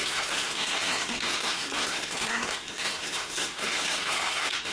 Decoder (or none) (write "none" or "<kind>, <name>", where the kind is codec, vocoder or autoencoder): codec, SNAC